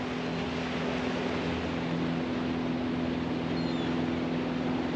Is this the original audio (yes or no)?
yes